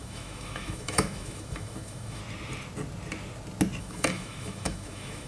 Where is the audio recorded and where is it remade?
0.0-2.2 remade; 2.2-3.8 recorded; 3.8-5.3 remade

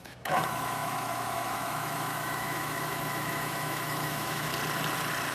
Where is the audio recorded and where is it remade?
0.0-4.5 remade; 4.5-5.3 recorded